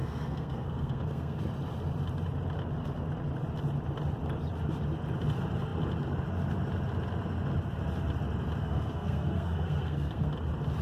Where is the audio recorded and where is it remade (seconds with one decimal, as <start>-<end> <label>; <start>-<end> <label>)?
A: 0.0-1.4 remade; 1.4-8.6 recorded; 8.6-10.3 remade; 10.3-10.8 recorded